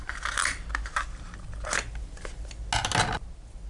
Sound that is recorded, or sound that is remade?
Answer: recorded